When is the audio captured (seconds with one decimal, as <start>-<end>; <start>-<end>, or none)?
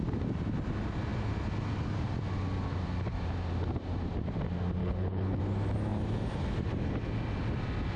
0.0-4.8; 5.4-8.0